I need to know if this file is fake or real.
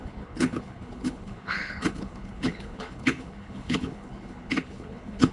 fake